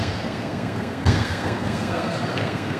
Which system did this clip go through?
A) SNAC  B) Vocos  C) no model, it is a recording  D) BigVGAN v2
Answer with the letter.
A